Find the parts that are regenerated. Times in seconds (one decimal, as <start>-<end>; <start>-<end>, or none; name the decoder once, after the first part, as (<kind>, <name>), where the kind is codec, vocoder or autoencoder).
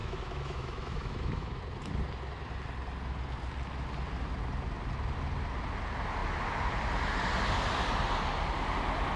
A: 0.0-1.6 (autoencoder, DAC-VAE)